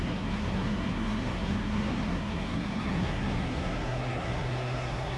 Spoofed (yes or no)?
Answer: yes